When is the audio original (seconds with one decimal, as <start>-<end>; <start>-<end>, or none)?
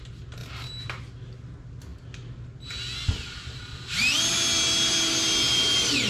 0.0-6.1